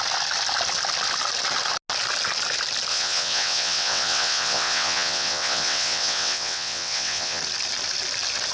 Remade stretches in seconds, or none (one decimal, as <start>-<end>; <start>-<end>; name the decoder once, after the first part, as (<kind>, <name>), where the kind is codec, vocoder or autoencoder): 2.9-7.4 (vocoder, WaveNeXt)